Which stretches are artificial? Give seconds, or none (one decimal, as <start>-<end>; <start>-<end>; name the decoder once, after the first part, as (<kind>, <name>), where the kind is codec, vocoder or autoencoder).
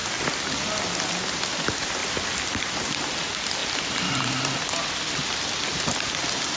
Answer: 2.0-2.8 (vocoder, BigVGAN v2); 3.6-6.6